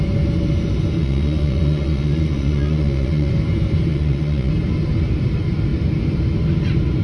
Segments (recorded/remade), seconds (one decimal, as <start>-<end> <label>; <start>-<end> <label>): 0.0-1.0 recorded; 1.0-3.3 remade; 3.3-3.9 recorded; 3.9-4.5 remade; 4.5-7.0 recorded